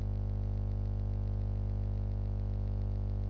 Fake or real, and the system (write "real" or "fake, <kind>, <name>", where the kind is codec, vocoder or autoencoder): real